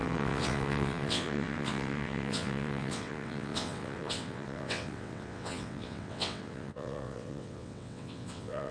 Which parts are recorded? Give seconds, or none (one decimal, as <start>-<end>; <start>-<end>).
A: none